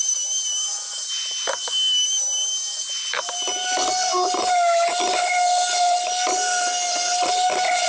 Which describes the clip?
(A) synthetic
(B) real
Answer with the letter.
B